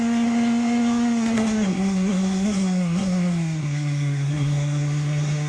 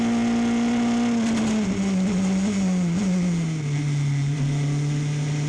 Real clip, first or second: second